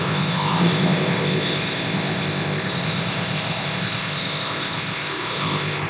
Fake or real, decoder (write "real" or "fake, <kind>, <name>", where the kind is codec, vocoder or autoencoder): fake, codec, ZipCodec